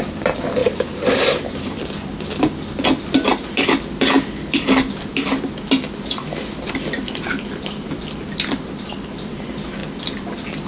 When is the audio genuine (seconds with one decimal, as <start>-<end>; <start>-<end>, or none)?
none